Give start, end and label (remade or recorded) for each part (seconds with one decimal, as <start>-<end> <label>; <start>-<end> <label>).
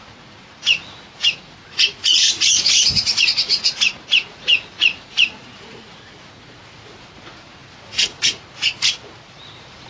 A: 0.0-9.9 remade